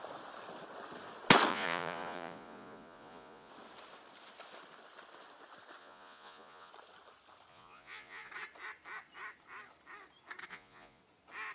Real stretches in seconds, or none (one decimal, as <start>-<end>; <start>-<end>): 0.0-1.5; 3.5-5.8; 6.7-7.5; 8.3-10.5; 11.0-11.5